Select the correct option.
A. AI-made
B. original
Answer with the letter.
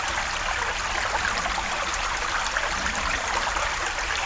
B